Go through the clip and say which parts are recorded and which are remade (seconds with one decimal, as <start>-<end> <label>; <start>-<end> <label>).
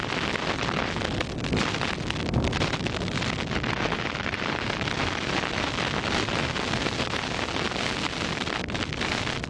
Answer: 0.0-9.5 recorded